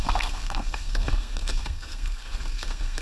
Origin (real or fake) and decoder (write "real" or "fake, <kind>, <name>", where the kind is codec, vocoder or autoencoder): fake, codec, SNAC